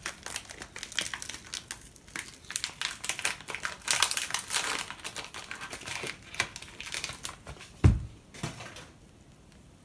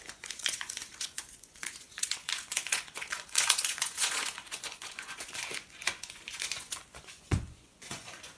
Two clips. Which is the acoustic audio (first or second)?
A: first